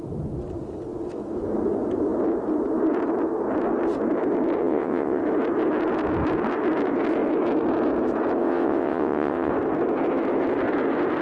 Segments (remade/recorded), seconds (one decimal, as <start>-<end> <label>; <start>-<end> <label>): 0.0-4.6 recorded; 4.6-5.2 remade; 5.2-8.4 recorded; 8.4-9.5 remade; 9.5-11.2 recorded